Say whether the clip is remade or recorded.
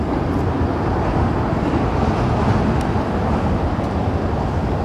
recorded